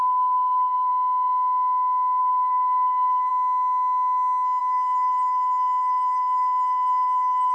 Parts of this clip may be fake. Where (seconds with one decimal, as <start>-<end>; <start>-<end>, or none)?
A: 0.0-0.9; 2.2-3.3; 4.6-7.5